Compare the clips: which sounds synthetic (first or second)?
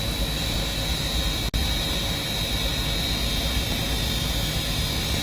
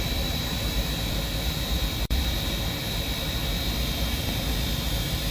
second